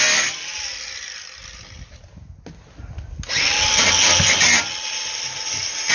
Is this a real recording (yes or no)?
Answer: yes